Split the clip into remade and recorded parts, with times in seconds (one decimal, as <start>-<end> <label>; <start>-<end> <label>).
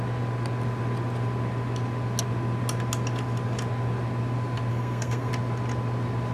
0.0-4.7 recorded; 4.7-5.3 remade; 5.3-6.3 recorded